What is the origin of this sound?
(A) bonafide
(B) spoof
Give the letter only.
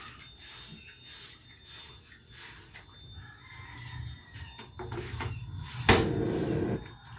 A